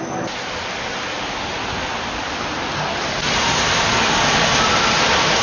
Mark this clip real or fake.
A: fake